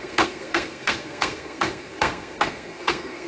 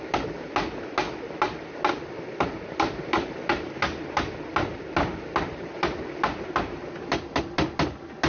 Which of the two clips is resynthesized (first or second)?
first